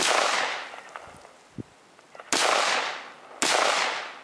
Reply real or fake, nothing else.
real